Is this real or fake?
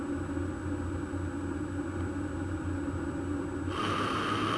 real